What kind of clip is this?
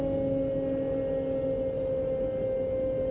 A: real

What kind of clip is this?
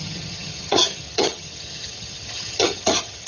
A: fake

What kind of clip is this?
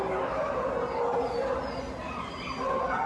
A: real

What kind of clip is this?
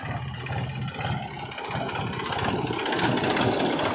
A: real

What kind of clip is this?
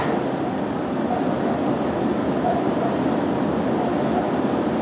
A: real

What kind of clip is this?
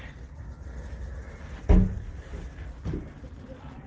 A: real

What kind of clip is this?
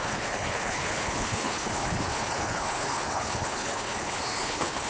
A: fake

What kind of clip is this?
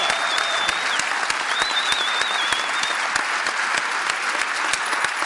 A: real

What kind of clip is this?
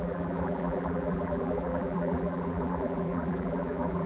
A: fake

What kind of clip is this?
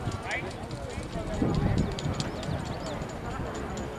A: real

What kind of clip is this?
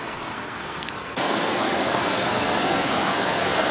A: fake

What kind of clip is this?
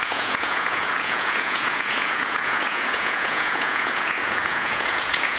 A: fake